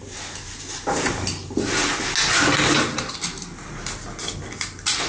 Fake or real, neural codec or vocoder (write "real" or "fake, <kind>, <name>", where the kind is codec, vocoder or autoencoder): real